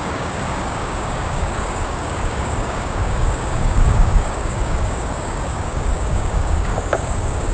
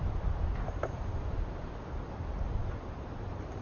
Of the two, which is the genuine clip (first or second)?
second